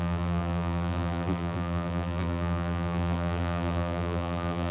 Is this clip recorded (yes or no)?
no